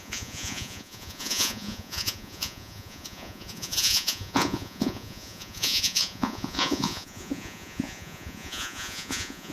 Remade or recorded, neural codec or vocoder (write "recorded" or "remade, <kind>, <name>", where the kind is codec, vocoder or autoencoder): remade, vocoder, Vocos